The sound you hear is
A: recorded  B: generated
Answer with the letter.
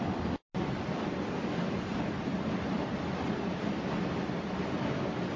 A